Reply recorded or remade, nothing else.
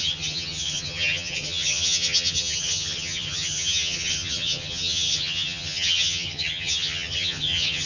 remade